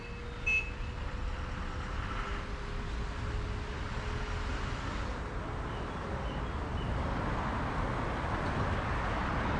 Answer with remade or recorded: recorded